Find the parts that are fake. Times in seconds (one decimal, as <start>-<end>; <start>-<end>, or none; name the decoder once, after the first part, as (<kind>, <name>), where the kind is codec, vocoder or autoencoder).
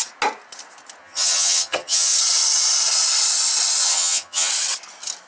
1.0-2.1 (vocoder, HiFi-GAN); 3.8-4.5